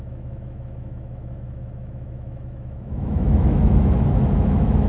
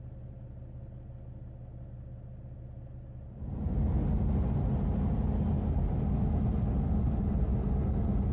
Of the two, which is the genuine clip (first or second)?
second